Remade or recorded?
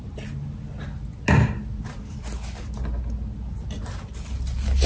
recorded